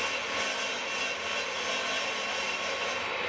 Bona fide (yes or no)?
yes